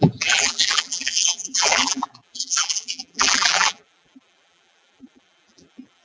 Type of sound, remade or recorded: remade